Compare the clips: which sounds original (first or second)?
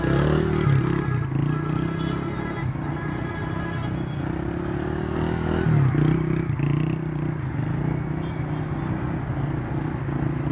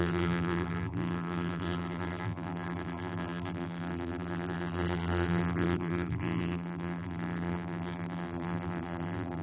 first